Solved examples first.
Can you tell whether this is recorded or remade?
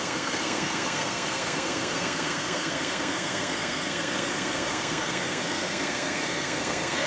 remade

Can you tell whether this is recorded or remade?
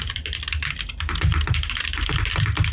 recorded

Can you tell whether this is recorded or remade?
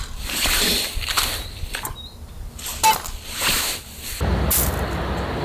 recorded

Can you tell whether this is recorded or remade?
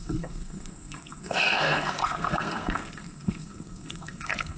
remade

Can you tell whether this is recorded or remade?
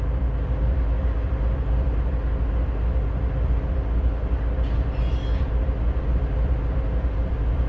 recorded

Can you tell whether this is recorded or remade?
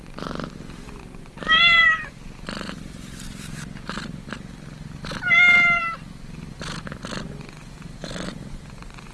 recorded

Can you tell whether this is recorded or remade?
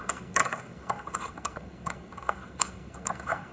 remade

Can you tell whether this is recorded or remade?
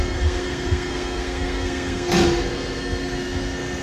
remade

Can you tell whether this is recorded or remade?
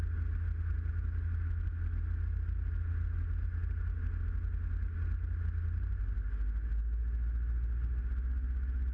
recorded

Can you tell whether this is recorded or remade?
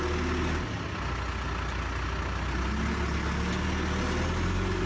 recorded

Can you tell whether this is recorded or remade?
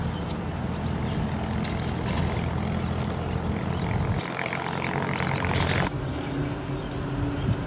recorded